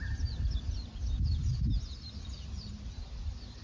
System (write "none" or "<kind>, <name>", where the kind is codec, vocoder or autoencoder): none